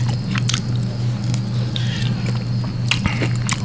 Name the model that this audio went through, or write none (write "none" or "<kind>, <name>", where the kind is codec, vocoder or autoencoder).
none